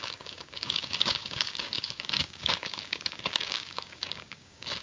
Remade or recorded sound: remade